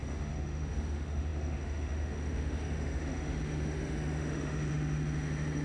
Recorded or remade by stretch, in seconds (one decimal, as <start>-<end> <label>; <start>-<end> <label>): 0.0-5.6 remade